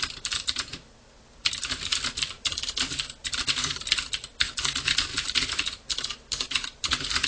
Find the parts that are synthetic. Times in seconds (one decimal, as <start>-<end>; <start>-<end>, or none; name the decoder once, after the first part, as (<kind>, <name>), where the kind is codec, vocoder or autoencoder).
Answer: 0.0-7.3 (vocoder, BigVGAN v2)